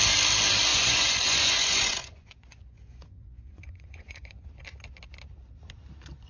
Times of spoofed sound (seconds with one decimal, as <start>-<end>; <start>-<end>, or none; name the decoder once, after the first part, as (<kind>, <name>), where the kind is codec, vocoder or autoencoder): 0.7-4.5 (vocoder, Vocos)